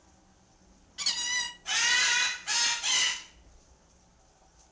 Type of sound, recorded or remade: recorded